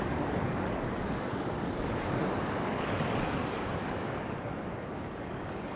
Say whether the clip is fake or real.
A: fake